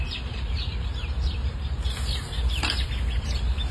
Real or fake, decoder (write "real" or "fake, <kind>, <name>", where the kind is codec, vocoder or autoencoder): fake, vocoder, BigVGAN v2